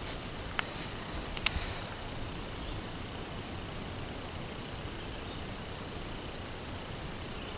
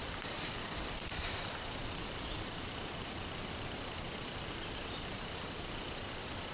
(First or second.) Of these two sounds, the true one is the first